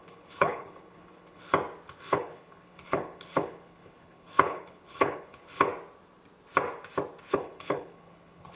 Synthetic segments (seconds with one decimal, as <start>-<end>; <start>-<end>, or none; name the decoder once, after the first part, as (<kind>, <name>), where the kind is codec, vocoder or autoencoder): 0.0-1.5 (codec, HILCodec); 2.0-5.7; 7.3-8.6